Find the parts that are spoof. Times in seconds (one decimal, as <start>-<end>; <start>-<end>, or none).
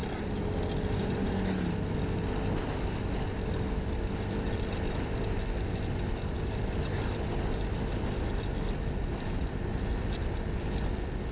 none